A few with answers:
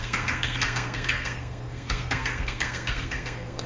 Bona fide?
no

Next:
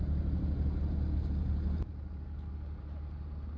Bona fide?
yes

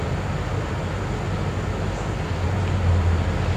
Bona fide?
yes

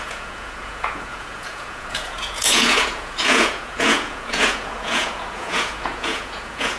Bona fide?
no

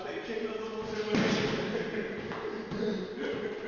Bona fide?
yes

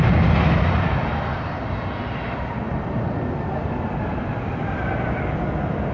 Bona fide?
yes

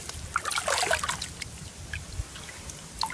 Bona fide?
yes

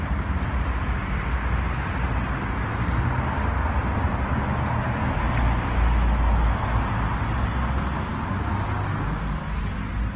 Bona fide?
yes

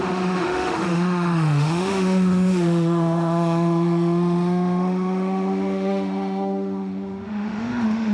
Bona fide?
no